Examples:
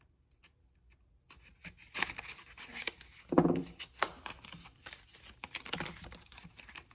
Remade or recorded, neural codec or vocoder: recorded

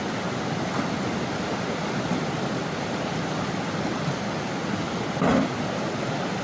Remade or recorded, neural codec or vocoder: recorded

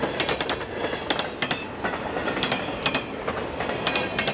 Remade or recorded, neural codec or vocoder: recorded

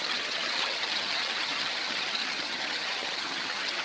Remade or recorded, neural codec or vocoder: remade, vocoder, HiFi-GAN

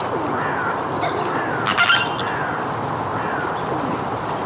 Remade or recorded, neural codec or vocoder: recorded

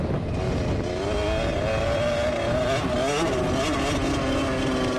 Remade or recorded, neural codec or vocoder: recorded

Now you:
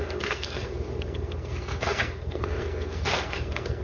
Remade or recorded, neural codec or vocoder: remade, codec, SNAC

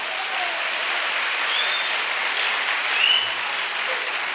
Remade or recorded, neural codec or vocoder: recorded